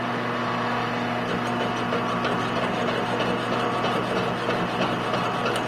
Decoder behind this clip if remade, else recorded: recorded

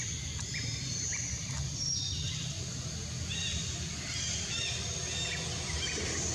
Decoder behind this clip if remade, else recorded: recorded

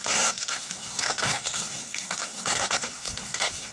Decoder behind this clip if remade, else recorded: remade, codec, SNAC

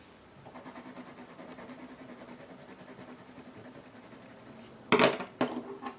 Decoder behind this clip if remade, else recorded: recorded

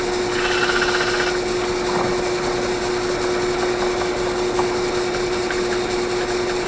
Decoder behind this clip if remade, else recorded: recorded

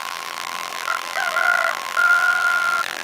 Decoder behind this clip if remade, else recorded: remade, vocoder, BigVGAN v2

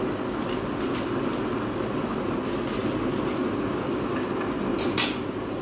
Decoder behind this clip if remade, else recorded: recorded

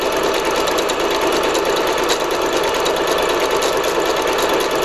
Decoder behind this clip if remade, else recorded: recorded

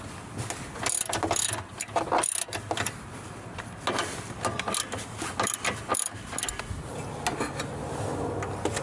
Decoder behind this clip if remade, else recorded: recorded